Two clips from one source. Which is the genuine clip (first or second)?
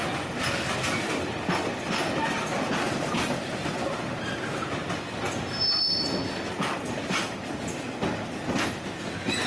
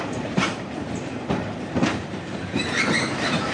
first